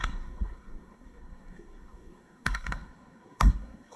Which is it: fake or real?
fake